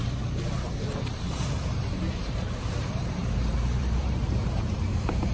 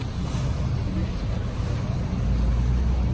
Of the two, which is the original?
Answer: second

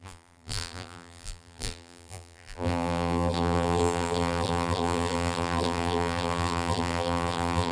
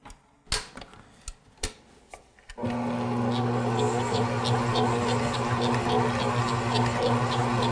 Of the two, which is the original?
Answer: second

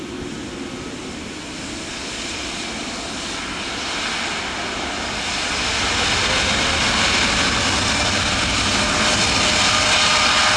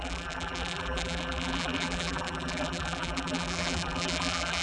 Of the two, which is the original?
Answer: first